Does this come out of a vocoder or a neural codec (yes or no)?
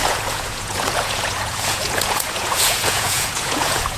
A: yes